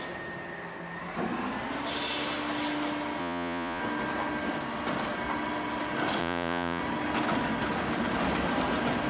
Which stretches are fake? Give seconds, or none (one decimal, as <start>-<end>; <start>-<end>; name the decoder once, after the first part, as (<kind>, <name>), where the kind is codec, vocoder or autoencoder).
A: 3.2-3.8 (vocoder, Vocos); 6.2-6.8